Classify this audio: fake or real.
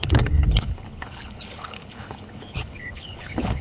fake